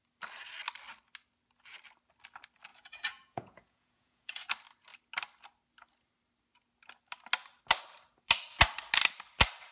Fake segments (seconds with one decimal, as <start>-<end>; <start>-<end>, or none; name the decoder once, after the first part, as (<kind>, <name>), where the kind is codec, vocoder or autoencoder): 2.7-4.5 (vocoder, Vocos)